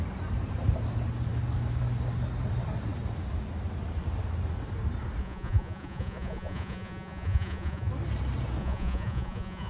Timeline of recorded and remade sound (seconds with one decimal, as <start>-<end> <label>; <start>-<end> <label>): 0.0-5.2 recorded; 5.2-7.9 remade; 7.9-8.6 recorded; 8.6-9.7 remade